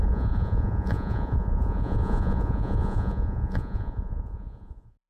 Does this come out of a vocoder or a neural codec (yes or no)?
yes